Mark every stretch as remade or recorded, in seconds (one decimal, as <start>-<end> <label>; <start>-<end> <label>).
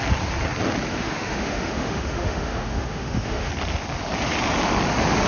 0.0-0.9 recorded; 0.9-3.5 remade; 3.5-5.3 recorded